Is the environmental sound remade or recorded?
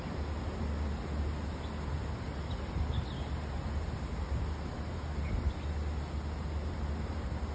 recorded